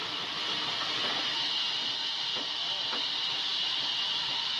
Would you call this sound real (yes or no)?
yes